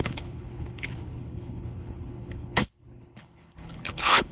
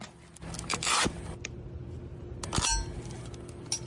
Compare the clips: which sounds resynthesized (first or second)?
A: first